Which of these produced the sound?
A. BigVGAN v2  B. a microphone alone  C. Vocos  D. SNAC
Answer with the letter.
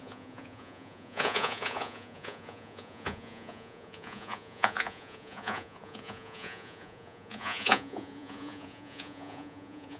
C